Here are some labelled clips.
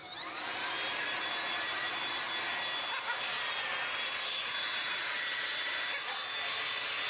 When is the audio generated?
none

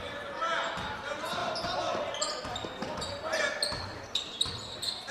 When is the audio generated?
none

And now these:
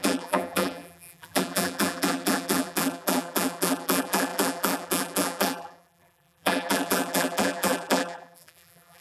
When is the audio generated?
0.0-9.0

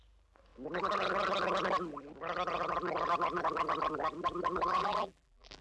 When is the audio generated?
4.8-5.6

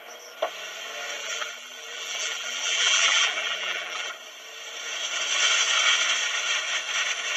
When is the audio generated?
1.2-4.1

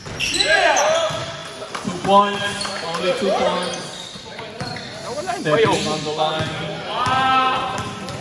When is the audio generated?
none